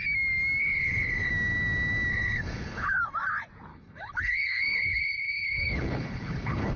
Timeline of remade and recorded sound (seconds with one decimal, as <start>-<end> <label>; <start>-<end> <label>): 0.0-0.6 recorded; 0.6-1.3 remade; 1.3-2.1 recorded; 2.1-3.0 remade; 3.0-3.7 recorded; 3.7-6.8 remade